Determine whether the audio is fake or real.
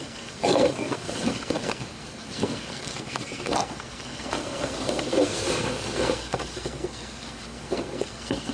fake